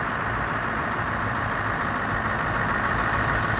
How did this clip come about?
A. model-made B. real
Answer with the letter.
B